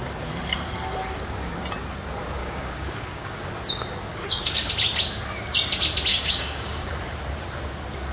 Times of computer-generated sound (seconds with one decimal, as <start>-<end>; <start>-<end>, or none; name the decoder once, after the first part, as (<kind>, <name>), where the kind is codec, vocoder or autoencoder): 2.4-3.4 (codec, DAC); 4.1-4.7; 6.1-6.9